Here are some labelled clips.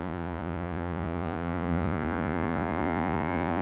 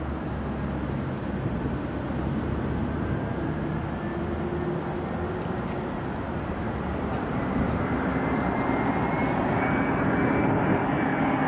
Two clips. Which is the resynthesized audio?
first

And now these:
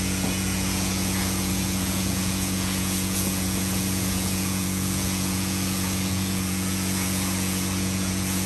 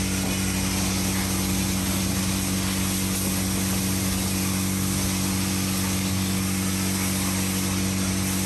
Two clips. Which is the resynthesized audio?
first